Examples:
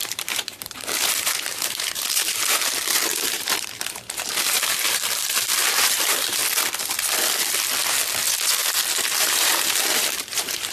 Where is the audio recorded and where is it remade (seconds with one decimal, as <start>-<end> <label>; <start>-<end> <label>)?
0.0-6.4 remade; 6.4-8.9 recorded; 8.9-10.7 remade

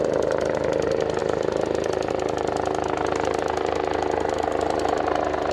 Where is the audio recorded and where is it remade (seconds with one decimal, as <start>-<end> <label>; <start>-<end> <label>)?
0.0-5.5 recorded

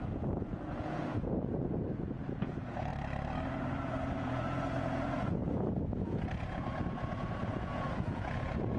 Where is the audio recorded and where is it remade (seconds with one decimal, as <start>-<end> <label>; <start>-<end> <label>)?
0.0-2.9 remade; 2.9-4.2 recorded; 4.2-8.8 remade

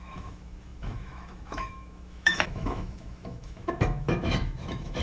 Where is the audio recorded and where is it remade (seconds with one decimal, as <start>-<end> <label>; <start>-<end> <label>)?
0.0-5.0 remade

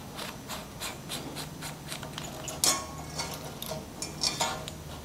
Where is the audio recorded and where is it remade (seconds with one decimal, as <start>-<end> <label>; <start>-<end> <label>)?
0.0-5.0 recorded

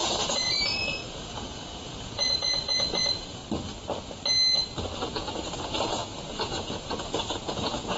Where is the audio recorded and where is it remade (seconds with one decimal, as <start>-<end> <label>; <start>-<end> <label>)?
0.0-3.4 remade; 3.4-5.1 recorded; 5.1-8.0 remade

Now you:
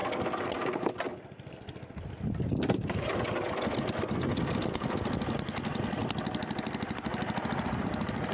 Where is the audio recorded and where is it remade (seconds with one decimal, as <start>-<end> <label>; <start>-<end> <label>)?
0.0-8.3 recorded